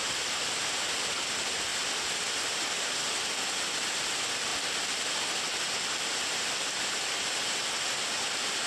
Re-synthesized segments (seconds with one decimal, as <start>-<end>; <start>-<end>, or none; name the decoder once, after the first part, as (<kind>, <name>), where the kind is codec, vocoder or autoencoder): none